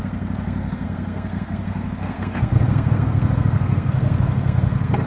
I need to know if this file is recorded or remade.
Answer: remade